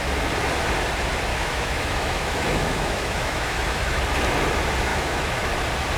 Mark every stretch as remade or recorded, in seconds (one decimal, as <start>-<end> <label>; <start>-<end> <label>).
0.0-1.3 recorded; 1.3-4.0 remade; 4.0-4.9 recorded; 4.9-5.5 remade; 5.5-6.0 recorded